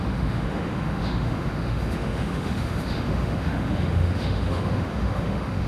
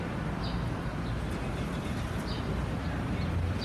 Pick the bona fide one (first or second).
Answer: second